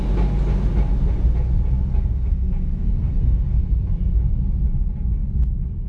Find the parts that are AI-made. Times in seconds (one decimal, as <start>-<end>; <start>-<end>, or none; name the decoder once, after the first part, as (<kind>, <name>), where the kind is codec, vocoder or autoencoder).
2.1-3.6 (codec, SNAC)